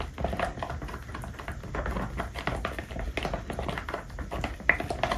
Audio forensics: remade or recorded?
recorded